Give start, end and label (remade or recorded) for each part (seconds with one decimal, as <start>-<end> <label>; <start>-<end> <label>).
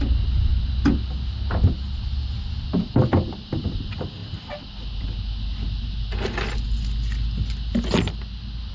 0.0-8.7 recorded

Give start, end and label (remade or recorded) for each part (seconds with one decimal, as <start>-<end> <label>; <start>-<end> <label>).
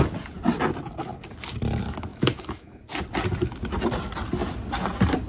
0.0-2.1 recorded; 2.1-2.8 remade; 2.8-5.3 recorded